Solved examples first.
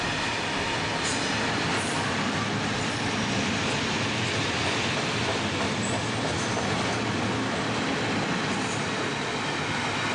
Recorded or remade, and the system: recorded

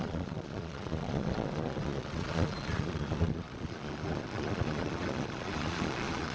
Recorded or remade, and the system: remade, vocoder, Vocos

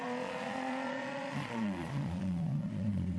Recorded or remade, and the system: remade, vocoder, Vocos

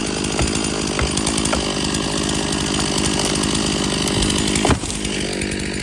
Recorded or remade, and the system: recorded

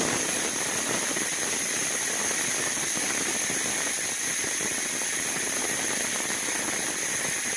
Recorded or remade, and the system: recorded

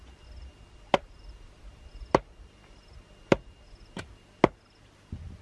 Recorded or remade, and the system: recorded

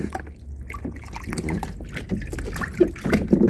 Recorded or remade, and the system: recorded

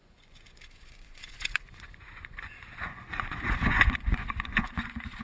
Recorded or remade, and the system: remade, vocoder, Vocos